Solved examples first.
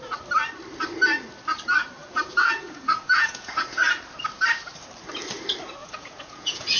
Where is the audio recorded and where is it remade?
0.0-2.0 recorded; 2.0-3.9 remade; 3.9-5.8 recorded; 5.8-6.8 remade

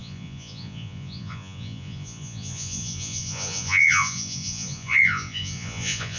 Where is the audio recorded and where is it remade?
0.0-6.2 remade

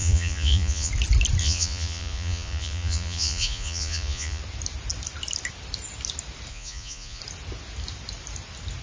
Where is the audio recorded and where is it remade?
0.0-0.9 remade; 0.9-1.4 recorded; 1.4-4.4 remade; 4.4-6.5 recorded; 6.5-7.2 remade; 7.2-8.8 recorded

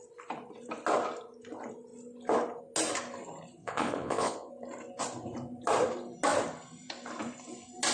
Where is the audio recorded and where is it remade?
0.0-3.6 recorded; 3.6-4.5 remade; 4.5-7.9 recorded

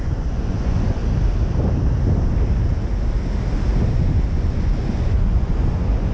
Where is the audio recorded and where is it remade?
0.0-1.0 remade; 1.0-4.3 recorded; 4.3-6.1 remade